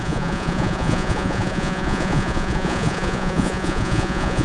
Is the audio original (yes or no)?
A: no